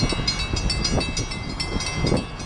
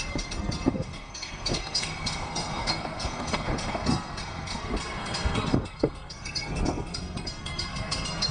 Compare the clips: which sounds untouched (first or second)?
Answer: first